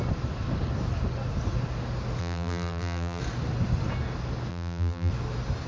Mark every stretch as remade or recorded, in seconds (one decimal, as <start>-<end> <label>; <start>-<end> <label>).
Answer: 0.0-2.2 recorded; 2.2-3.2 remade; 3.2-4.5 recorded; 4.5-5.1 remade; 5.1-5.7 recorded